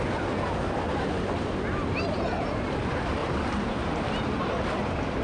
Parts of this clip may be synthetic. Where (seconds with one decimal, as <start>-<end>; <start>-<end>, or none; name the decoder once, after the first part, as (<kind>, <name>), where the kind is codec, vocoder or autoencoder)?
3.2-3.9 (vocoder, BigVGAN v2)